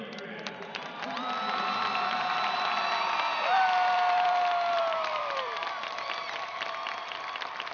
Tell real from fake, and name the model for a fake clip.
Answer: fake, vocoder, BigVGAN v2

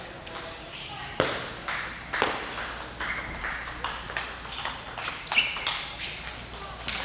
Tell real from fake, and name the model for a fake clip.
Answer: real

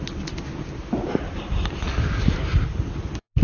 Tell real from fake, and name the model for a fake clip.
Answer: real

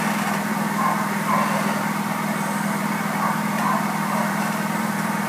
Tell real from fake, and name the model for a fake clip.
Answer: real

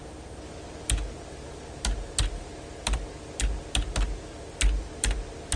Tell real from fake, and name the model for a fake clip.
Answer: real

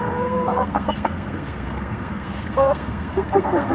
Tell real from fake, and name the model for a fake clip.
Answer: fake, codec, SNAC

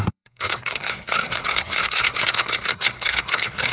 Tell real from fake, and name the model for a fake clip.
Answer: fake, codec, SNAC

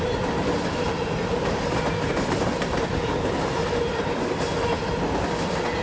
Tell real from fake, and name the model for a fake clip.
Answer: real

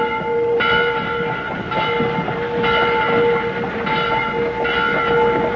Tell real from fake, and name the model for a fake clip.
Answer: real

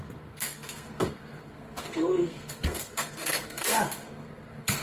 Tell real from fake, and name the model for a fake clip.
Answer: fake, codec, SNAC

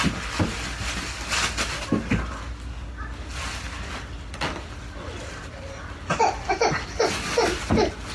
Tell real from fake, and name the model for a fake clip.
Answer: real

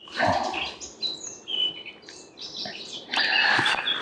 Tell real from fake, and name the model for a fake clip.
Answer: real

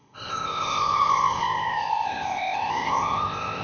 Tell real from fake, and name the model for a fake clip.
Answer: fake, codec, ZipCodec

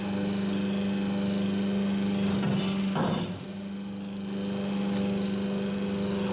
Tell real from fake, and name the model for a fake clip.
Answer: real